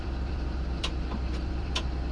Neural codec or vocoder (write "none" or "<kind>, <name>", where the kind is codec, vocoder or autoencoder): vocoder, BigVGAN v2